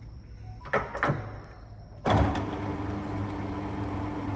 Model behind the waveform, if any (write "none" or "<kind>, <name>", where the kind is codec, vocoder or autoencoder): none